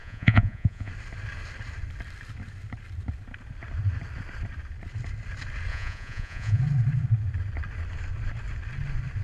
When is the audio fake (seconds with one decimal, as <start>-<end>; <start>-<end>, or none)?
0.0-0.9; 5.7-6.6